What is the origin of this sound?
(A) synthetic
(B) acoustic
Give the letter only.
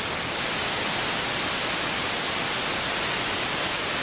B